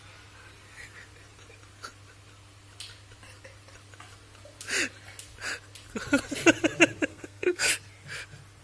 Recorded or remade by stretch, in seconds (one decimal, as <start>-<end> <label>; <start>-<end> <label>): 0.0-7.1 recorded; 7.1-7.7 remade; 7.7-8.6 recorded